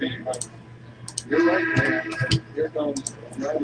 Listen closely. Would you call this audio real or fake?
real